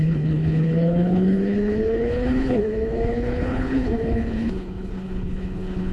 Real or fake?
fake